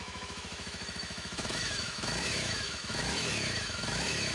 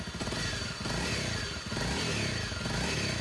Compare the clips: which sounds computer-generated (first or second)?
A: first